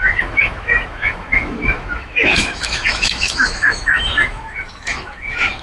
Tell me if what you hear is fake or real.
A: fake